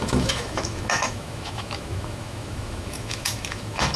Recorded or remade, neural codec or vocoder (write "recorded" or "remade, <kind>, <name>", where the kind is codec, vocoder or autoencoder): remade, autoencoder, DAC-VAE